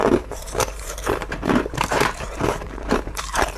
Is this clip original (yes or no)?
no